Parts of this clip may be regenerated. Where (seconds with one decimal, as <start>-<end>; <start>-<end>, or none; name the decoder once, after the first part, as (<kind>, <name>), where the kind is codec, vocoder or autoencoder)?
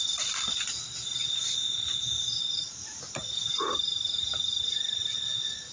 none